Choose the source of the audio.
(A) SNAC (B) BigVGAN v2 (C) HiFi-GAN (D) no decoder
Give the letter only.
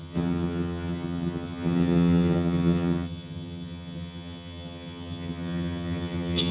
C